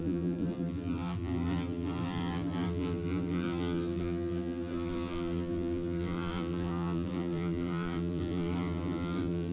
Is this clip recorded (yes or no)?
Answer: no